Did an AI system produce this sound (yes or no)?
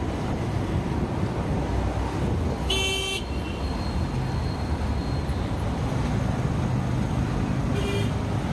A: no